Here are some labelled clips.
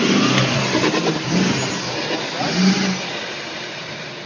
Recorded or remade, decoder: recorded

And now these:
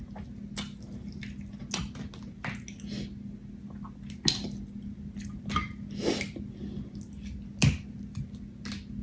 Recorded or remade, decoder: recorded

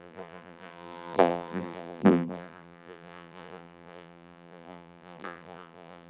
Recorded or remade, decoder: remade, vocoder, BigVGAN v2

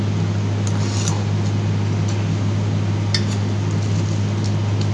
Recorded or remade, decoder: recorded